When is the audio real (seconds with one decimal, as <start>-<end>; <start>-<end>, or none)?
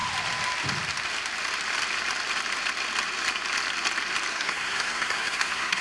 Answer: 0.0-4.3